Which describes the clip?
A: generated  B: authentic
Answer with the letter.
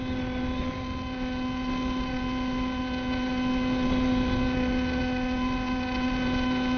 B